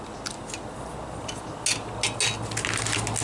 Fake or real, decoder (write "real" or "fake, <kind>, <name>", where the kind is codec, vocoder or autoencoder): real